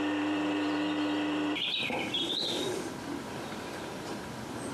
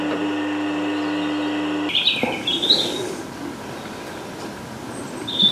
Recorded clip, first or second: second